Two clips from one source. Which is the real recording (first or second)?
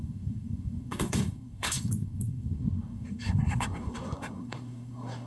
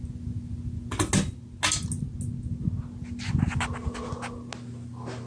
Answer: second